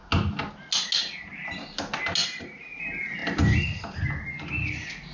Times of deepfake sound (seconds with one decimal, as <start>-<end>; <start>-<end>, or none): 2.2-2.8

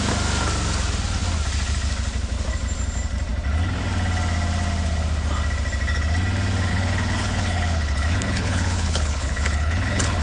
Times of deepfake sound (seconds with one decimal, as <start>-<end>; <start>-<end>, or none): 6.7-10.2